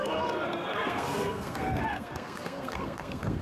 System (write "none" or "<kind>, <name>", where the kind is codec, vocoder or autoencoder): codec, SNAC